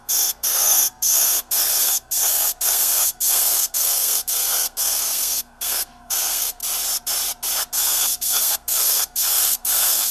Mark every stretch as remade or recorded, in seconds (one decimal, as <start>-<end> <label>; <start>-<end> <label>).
0.0-6.6 remade; 6.6-7.7 recorded; 7.7-10.1 remade